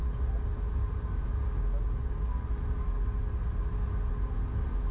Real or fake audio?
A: real